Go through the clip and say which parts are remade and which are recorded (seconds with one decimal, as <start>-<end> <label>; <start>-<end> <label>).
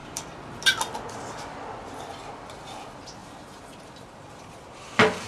0.0-0.7 remade; 0.7-3.2 recorded; 3.2-4.4 remade; 4.4-5.3 recorded